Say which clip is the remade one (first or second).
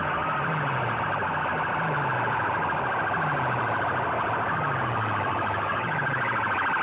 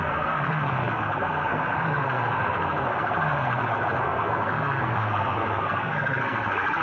second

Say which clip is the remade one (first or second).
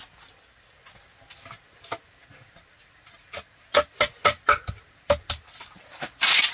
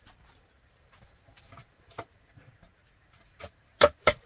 second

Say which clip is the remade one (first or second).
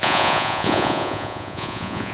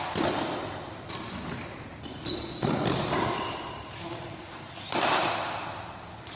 first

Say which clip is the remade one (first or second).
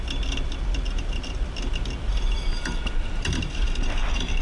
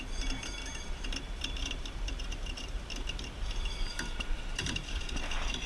second